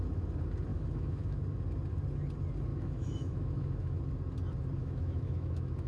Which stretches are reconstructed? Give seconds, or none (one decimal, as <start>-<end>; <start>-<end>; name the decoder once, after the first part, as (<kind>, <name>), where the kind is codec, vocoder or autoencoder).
0.7-1.4 (autoencoder, DAC-VAE); 2.7-4.0; 4.8-5.9